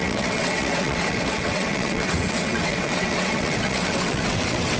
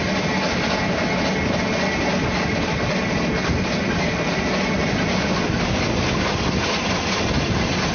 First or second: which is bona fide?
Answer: second